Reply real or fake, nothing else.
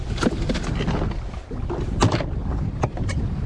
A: real